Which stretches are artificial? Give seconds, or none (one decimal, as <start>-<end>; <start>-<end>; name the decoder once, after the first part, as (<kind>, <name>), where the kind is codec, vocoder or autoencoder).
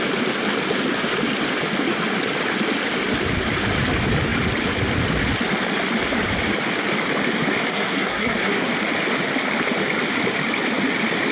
7.7-8.7 (codec, SNAC)